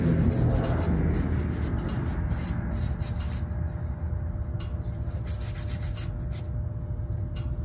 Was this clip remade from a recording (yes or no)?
no